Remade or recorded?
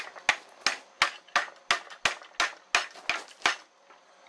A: recorded